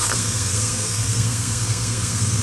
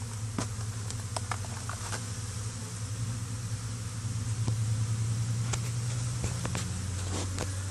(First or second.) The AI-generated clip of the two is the first